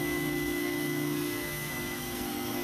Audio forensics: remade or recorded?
remade